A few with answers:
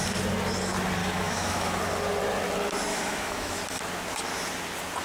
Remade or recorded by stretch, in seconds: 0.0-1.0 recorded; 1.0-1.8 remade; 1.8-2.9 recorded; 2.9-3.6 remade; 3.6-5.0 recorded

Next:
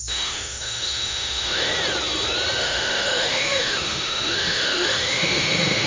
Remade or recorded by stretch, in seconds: 0.0-1.7 remade; 1.7-2.6 recorded; 2.6-5.9 remade

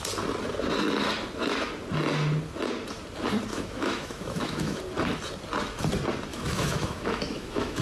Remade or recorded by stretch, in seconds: 0.0-3.5 recorded; 3.5-4.8 remade; 4.8-6.3 recorded; 6.3-7.8 remade

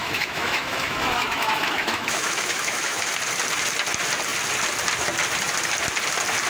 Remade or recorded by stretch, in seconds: 0.0-3.1 remade; 3.1-6.5 recorded

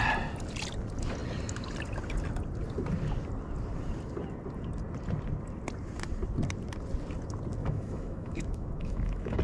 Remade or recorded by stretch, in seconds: 0.0-7.6 recorded; 7.6-9.4 remade

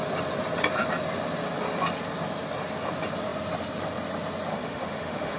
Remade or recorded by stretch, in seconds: 0.0-4.5 recorded; 4.5-5.4 remade

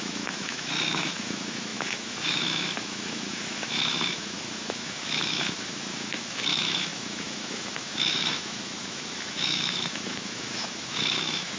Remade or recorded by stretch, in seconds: 0.0-11.6 remade